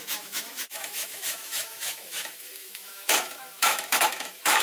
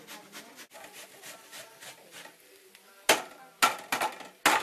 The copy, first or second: first